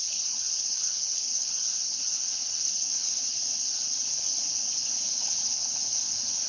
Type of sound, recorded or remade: remade